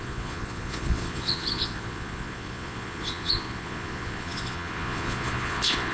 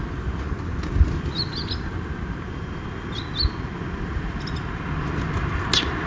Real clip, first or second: second